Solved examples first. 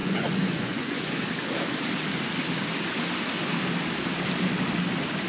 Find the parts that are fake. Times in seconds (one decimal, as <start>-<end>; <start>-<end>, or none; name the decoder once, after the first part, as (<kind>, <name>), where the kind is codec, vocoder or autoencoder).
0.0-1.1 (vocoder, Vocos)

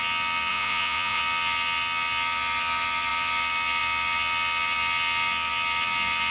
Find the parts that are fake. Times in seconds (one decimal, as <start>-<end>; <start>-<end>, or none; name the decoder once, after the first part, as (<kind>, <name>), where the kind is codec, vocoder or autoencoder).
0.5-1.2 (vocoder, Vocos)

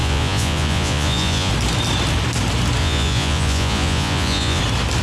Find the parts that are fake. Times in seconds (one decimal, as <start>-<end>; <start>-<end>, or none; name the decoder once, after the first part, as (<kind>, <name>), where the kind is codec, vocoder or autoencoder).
0.0-1.5 (vocoder, Vocos); 2.8-4.6

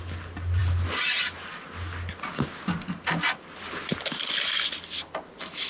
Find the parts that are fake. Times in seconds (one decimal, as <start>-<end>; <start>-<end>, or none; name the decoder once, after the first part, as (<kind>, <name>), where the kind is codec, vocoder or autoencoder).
none

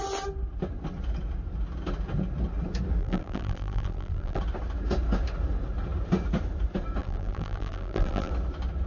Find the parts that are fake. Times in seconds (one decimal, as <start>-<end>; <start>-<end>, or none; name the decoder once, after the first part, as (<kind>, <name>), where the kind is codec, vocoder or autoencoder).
3.0-4.4 (vocoder, BigVGAN v2); 7.0-8.3

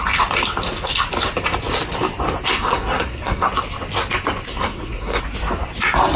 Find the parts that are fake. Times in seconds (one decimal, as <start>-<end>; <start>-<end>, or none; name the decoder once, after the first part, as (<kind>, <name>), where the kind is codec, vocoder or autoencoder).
2.5-3.5 (codec, SNAC); 4.5-5.2

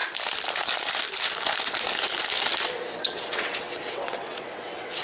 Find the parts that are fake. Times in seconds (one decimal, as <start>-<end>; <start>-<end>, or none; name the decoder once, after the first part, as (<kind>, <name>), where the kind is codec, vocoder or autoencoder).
3.0-5.0 (vocoder, WaveNeXt)

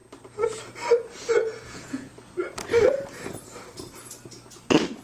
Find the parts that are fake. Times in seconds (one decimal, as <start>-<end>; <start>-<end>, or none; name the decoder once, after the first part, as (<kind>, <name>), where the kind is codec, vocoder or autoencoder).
1.3-2.1 (vocoder, Vocos)